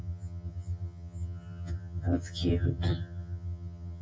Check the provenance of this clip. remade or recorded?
remade